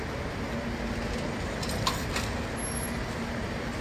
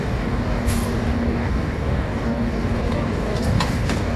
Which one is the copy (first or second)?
second